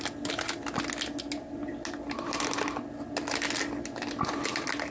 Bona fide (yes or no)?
yes